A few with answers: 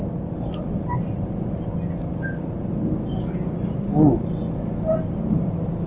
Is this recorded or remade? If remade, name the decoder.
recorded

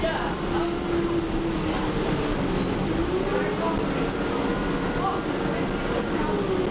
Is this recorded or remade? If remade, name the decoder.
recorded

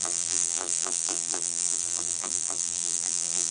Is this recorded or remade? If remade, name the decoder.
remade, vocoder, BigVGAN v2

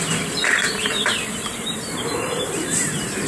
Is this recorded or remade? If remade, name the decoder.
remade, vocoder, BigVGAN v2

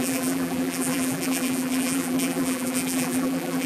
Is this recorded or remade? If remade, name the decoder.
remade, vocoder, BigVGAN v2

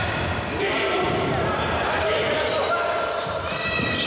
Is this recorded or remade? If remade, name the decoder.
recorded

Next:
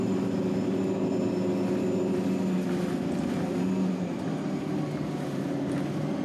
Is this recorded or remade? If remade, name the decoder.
recorded